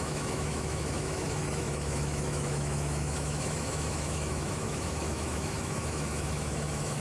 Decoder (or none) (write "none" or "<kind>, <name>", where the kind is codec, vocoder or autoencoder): autoencoder, DAC-VAE